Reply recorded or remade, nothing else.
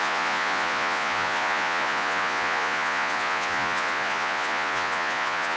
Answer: remade